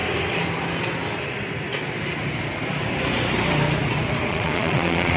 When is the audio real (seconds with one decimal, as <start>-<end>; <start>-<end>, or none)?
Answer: 0.0-4.3